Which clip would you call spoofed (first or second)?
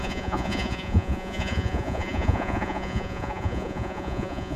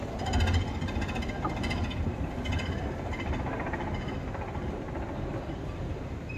first